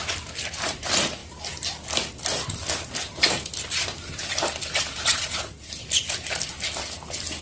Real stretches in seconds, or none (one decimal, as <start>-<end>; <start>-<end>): none